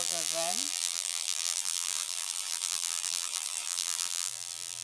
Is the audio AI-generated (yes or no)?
yes